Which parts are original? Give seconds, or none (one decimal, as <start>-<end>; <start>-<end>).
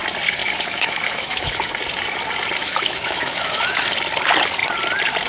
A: 0.0-0.4; 1.7-2.6; 3.9-5.3